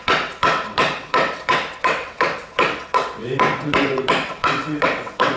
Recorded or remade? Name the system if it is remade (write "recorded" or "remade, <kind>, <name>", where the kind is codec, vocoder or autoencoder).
remade, vocoder, WaveNeXt